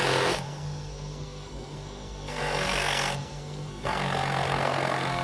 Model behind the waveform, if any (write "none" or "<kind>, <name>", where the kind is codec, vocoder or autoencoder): codec, SNAC